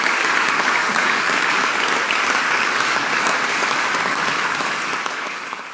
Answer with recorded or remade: remade